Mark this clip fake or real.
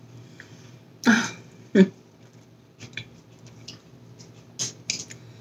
real